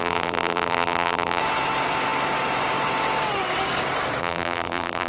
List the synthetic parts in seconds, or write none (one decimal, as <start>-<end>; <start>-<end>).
0.0-1.4; 4.2-5.1